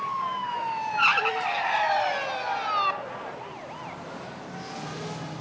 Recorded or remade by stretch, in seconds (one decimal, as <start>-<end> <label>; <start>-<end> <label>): 0.0-5.4 recorded

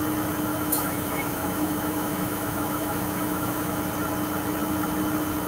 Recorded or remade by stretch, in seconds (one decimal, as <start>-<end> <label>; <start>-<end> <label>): 0.0-0.5 recorded; 0.5-3.8 remade; 3.8-5.5 recorded

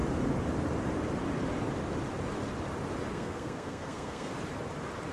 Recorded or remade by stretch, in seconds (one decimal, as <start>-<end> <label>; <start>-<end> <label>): 0.0-3.1 recorded; 3.1-4.3 remade; 4.3-5.1 recorded

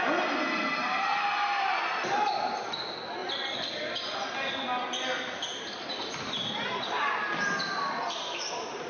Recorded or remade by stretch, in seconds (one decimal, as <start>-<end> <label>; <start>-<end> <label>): 0.0-8.9 recorded

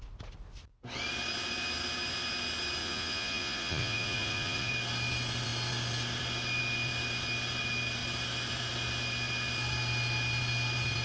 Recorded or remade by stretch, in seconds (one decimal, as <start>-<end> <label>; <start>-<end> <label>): 0.0-2.8 recorded; 2.8-4.7 remade; 4.7-11.0 recorded

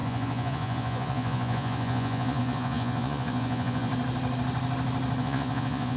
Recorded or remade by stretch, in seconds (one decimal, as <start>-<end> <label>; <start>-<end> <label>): 0.0-3.9 remade; 3.9-5.2 recorded; 5.2-6.0 remade

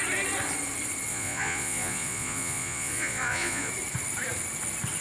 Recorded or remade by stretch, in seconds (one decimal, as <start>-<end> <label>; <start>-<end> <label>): 0.0-1.1 recorded; 1.1-3.7 remade; 3.7-5.0 recorded